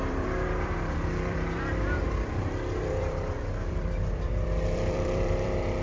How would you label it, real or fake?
fake